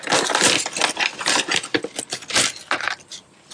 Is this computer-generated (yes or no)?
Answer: no